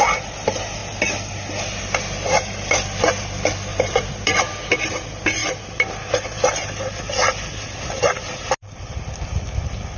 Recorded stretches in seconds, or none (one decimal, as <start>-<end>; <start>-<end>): 0.0-3.7; 4.4-10.0